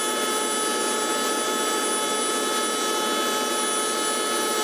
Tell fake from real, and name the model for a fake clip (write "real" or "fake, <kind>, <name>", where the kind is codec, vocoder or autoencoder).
real